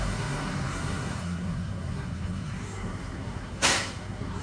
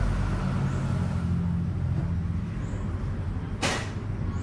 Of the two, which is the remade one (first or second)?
first